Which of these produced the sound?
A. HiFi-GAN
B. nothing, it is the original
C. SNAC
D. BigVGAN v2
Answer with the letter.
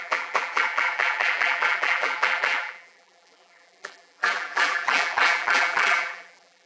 D